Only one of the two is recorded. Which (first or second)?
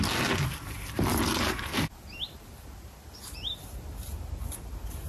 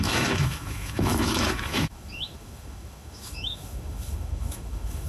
first